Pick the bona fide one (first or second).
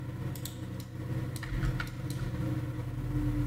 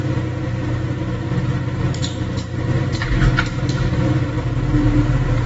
first